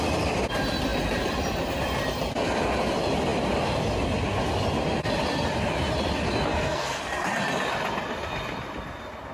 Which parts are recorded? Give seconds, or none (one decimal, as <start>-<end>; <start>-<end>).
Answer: 0.0-6.5; 7.0-9.3